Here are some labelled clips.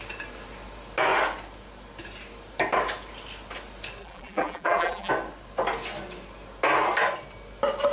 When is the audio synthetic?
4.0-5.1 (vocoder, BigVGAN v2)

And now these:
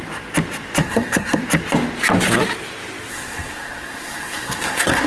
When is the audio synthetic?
0.8-1.4 (codec, SNAC); 3.1-5.1

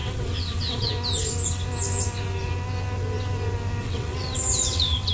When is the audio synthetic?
0.0-0.9 (vocoder, WaveNeXt); 3.8-5.1

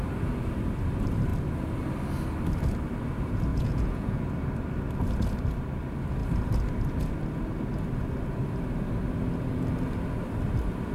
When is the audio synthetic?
3.5-4.2 (vocoder, Vocos)